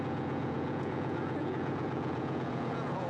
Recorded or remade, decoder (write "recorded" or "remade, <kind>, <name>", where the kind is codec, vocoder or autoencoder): remade, vocoder, Vocos